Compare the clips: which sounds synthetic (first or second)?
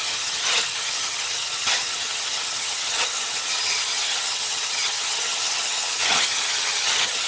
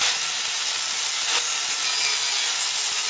first